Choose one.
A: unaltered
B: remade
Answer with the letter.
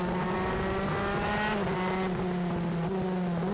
A